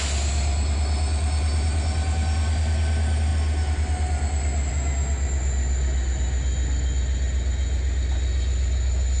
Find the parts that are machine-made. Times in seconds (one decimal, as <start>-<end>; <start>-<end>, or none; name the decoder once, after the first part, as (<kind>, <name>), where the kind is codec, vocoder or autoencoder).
none